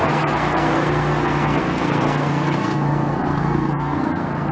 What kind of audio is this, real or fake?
fake